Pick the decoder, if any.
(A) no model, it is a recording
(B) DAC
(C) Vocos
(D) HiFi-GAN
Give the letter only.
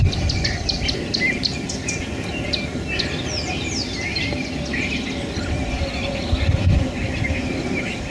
A